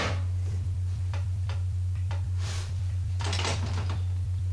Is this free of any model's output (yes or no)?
no